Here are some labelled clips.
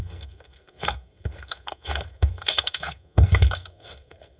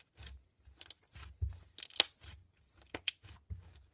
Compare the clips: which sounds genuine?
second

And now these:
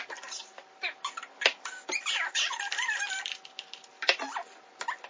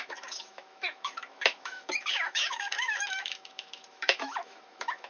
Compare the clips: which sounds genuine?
first